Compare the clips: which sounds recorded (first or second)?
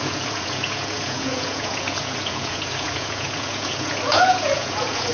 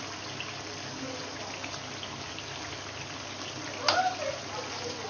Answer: second